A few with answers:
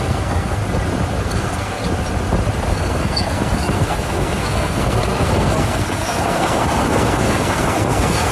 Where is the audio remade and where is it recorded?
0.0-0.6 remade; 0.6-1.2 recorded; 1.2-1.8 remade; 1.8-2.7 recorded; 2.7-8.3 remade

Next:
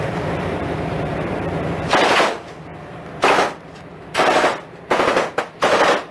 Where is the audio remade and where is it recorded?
0.0-2.7 remade; 2.7-3.3 recorded; 3.3-3.9 remade; 3.9-6.1 recorded

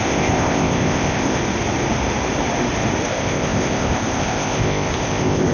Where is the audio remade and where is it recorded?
0.0-1.4 remade; 1.4-3.1 recorded; 3.1-5.5 remade

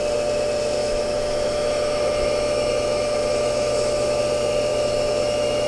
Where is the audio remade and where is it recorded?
0.0-0.8 recorded; 0.8-4.2 remade; 4.2-4.7 recorded; 4.7-5.7 remade